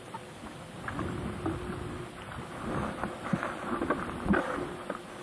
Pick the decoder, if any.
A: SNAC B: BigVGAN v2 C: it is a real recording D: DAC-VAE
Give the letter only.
C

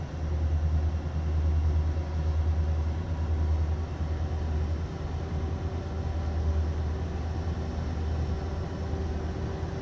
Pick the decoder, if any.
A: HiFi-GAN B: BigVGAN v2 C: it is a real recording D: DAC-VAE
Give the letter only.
C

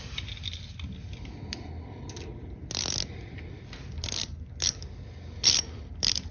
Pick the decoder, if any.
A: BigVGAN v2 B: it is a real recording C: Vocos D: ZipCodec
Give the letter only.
B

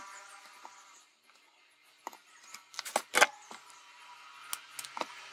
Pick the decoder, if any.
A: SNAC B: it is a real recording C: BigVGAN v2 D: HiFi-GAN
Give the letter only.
B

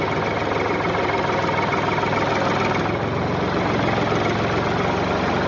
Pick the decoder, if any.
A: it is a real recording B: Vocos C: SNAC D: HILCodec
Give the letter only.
A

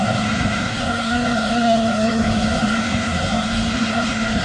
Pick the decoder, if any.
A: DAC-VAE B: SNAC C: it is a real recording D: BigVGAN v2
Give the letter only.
B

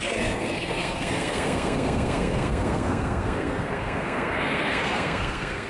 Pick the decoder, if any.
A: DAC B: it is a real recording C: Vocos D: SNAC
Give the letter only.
D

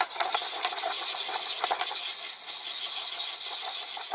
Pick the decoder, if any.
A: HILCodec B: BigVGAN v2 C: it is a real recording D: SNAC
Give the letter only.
C